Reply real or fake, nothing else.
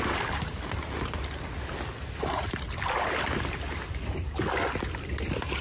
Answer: real